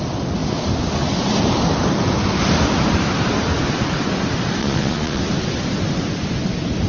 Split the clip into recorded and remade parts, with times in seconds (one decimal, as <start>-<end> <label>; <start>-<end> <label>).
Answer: 0.0-4.6 recorded; 4.6-5.2 remade; 5.2-6.9 recorded

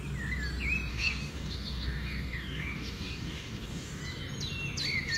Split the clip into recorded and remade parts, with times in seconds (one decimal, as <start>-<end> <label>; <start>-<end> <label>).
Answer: 0.0-0.9 recorded; 0.9-4.0 remade; 4.0-5.2 recorded

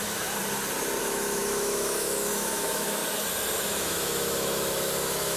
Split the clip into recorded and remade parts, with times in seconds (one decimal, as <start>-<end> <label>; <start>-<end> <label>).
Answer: 0.0-0.4 remade; 0.4-1.0 recorded; 1.0-3.0 remade; 3.0-3.6 recorded; 3.6-5.4 remade

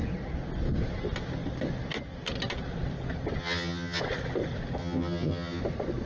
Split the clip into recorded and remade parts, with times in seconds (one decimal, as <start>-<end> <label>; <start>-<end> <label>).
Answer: 0.0-3.4 recorded; 3.4-4.0 remade; 4.0-4.8 recorded; 4.8-5.6 remade; 5.6-6.1 recorded

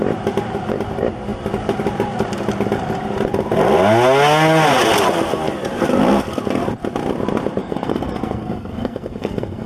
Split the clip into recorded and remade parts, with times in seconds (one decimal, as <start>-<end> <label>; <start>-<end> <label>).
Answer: 0.0-7.6 recorded; 7.6-9.7 remade

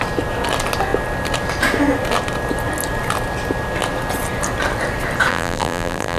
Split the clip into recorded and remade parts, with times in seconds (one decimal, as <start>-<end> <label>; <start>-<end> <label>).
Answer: 0.0-5.3 recorded; 5.3-6.2 remade

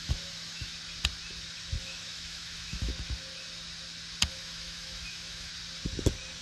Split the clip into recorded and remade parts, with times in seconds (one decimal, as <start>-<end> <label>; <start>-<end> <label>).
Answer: 0.0-0.7 remade; 0.7-1.8 recorded; 1.8-2.9 remade; 2.9-4.3 recorded; 4.3-5.5 remade; 5.5-6.4 recorded

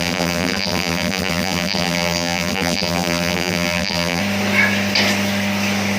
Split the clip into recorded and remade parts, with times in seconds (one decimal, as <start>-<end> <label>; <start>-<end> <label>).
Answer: 0.0-4.2 remade; 4.2-6.0 recorded